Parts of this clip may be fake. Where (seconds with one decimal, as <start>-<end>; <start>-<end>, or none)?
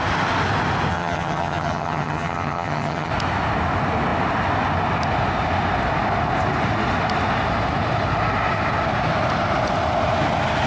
0.9-3.1